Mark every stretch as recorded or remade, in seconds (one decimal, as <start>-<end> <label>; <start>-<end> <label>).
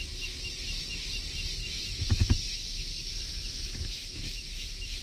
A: 0.0-1.6 recorded; 1.6-2.8 remade; 2.8-3.3 recorded; 3.3-5.0 remade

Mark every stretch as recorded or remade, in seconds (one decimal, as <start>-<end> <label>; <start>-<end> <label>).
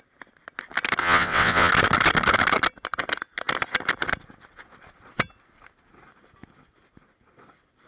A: 0.0-1.0 recorded; 1.0-1.7 remade; 1.7-7.9 recorded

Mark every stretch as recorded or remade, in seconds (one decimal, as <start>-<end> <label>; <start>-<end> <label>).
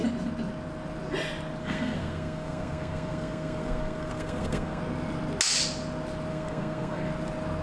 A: 0.0-1.6 recorded; 1.6-4.8 remade; 4.8-6.3 recorded; 6.3-7.1 remade; 7.1-7.6 recorded